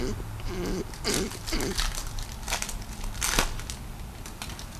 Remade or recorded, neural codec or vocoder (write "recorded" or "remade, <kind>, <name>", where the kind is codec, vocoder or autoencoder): recorded